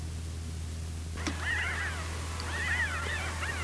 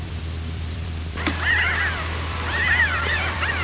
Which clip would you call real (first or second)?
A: first